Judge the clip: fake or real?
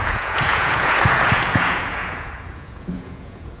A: fake